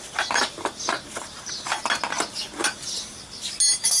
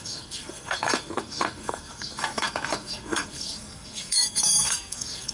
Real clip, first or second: first